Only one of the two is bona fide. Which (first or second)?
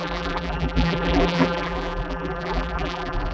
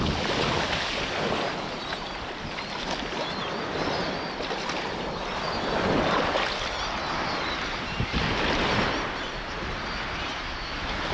second